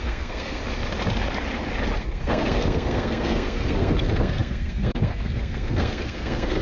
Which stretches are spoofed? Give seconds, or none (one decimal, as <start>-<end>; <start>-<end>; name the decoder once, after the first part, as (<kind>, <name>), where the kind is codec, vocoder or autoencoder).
0.0-0.6 (codec, SNAC); 2.0-6.6